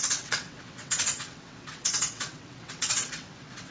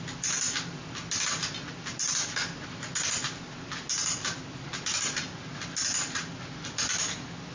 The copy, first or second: first